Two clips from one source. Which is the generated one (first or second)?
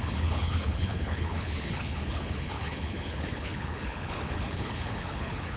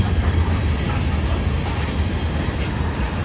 first